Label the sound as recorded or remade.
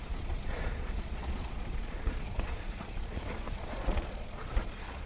remade